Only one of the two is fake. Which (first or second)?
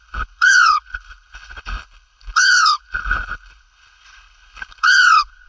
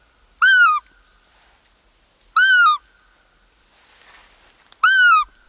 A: first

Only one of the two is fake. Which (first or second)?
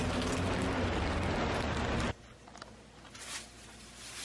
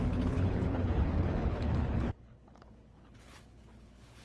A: second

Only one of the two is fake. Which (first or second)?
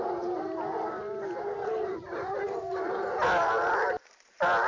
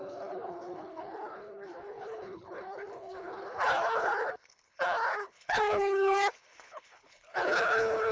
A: second